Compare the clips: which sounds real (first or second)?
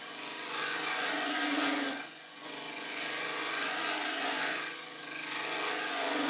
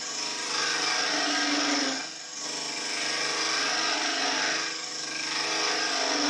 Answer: second